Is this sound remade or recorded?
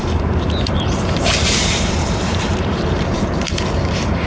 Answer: remade